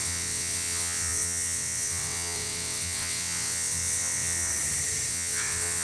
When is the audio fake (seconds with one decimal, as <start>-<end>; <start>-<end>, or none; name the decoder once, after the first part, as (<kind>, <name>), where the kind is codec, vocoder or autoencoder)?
0.0-4.5 (vocoder, WaveNeXt); 5.1-5.8

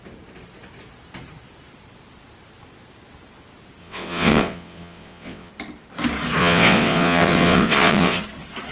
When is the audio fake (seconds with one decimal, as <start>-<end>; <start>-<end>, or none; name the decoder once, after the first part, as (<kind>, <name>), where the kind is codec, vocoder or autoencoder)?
3.8-5.5 (vocoder, WaveNeXt); 6.4-8.2

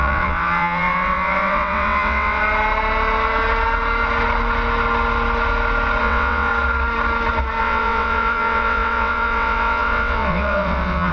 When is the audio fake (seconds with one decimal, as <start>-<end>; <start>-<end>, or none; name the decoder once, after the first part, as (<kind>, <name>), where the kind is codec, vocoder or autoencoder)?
0.0-2.4 (vocoder, WaveNeXt); 6.0-6.5; 7.6-11.1

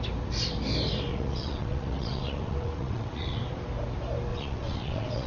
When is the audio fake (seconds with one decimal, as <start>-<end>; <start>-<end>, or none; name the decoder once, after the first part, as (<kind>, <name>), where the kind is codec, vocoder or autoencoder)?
1.1-3.4 (vocoder, WaveNeXt); 4.3-5.3